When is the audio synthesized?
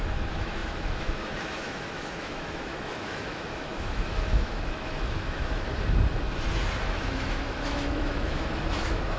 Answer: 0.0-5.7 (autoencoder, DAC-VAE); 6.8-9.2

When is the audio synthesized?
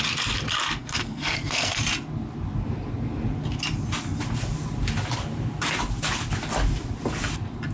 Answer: 0.8-1.8 (codec, SNAC)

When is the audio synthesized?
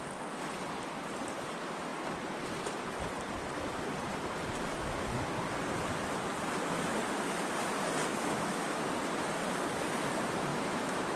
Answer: 8.1-8.8 (autoencoder, DAC-VAE); 10.5-11.2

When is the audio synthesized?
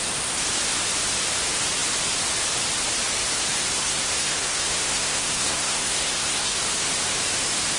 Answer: 3.7-6.6 (codec, SNAC)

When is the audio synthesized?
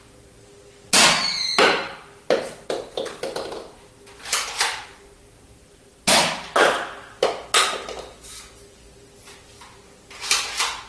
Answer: none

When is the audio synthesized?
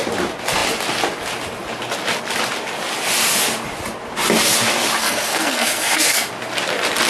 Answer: 5.0-6.3 (codec, SNAC)